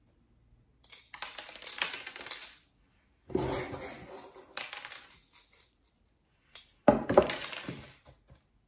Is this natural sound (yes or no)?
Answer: yes